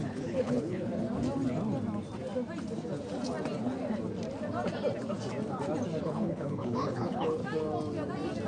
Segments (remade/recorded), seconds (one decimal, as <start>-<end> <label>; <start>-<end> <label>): 0.0-0.9 remade; 0.9-6.0 recorded; 6.0-7.4 remade; 7.4-8.5 recorded